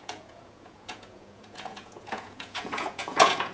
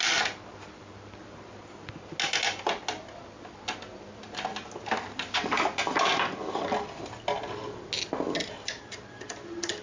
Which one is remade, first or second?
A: first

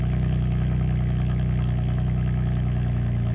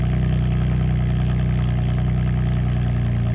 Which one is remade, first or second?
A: first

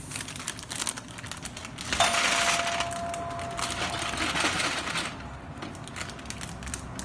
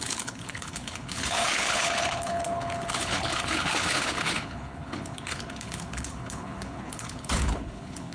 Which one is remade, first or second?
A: second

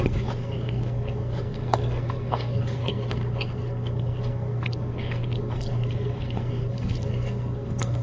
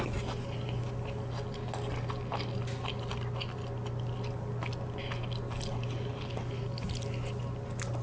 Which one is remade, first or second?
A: first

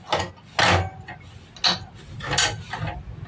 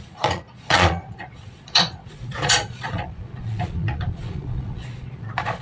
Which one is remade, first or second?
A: second